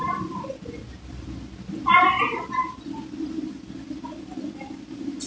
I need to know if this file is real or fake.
real